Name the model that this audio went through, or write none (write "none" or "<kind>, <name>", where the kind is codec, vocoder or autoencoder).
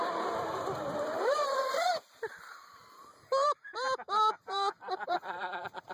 vocoder, BigVGAN v2